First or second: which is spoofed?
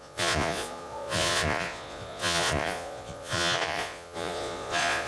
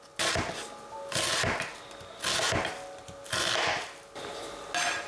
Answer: first